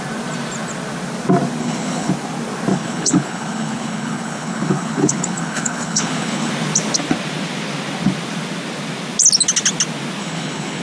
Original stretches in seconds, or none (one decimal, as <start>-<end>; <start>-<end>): 0.0-1.6; 2.1-2.7; 6.5-10.2